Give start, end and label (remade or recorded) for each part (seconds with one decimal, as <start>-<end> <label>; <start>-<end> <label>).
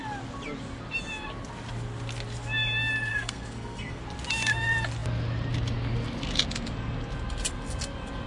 0.0-3.1 recorded; 3.1-4.0 remade; 4.0-8.3 recorded